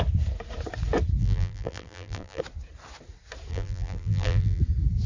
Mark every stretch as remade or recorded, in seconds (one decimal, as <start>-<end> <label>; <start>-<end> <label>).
0.0-1.2 recorded; 1.2-2.4 remade; 2.4-3.5 recorded; 3.5-4.6 remade; 4.6-5.1 recorded